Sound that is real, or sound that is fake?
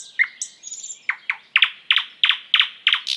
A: real